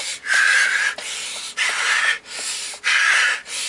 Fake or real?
real